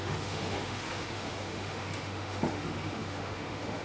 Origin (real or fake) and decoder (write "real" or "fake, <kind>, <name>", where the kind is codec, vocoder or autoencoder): fake, autoencoder, DAC-VAE